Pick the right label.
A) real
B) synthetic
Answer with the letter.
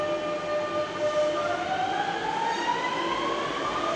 A